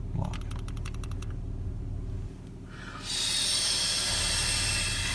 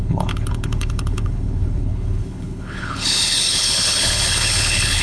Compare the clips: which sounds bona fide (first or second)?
first